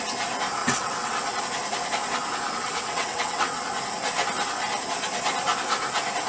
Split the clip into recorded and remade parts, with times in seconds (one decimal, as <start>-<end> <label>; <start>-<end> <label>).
0.0-0.6 recorded; 0.6-1.4 remade; 1.4-2.6 recorded; 2.6-3.6 remade; 3.6-6.3 recorded